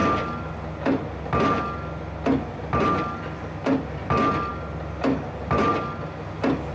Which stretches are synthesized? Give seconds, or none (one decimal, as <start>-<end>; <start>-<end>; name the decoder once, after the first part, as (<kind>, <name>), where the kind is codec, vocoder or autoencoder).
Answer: none